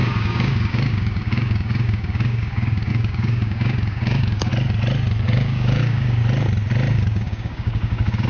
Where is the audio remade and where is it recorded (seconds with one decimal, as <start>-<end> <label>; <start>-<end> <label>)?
0.0-4.5 remade; 4.5-5.2 recorded; 5.2-6.2 remade; 6.2-6.9 recorded; 6.9-8.3 remade